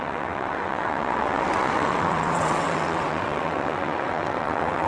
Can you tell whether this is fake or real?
fake